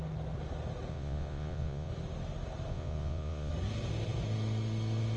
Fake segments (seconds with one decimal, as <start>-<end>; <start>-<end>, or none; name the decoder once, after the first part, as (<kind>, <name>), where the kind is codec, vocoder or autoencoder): 0.9-1.9 (vocoder, Vocos); 2.7-3.5